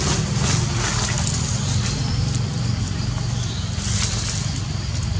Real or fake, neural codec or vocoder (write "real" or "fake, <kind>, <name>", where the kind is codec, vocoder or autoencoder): real